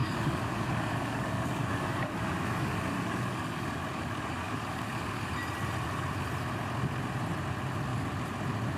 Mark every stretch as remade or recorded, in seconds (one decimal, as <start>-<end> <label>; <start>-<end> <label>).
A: 0.0-5.3 remade; 5.3-8.8 recorded

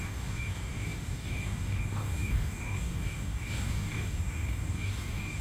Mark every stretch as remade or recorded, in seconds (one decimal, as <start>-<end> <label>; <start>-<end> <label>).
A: 0.0-5.4 remade

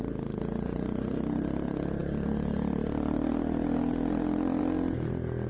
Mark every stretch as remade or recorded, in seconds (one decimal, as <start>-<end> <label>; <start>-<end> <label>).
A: 0.0-5.5 recorded

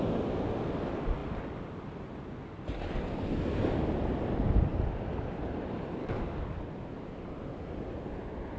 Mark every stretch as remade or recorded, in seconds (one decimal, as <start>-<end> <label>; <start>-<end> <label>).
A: 0.0-6.0 recorded; 6.0-6.7 remade; 6.7-8.6 recorded

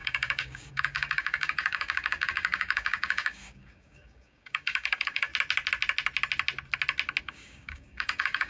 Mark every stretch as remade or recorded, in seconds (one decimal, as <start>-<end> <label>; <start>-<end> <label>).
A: 0.0-5.3 remade; 5.3-7.2 recorded; 7.2-8.5 remade